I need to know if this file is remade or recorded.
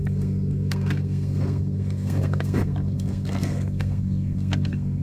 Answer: remade